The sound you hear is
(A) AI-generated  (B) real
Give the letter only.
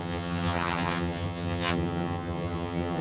A